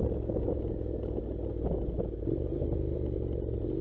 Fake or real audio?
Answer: real